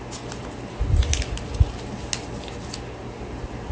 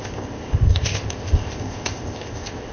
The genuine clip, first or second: first